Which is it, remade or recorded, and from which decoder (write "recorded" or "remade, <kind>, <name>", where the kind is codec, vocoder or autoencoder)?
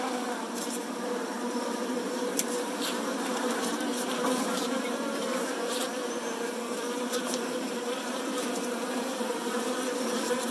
remade, vocoder, BigVGAN v2